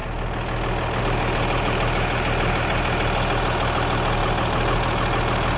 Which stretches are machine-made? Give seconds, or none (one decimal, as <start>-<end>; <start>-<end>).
none